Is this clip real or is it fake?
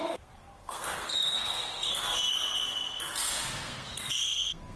fake